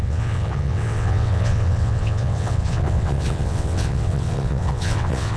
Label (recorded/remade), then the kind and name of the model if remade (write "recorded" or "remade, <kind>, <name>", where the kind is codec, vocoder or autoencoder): remade, vocoder, WaveNeXt